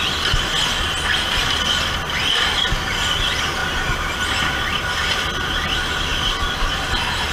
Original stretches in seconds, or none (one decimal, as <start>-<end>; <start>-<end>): 0.0-3.6; 4.8-6.1; 6.7-7.3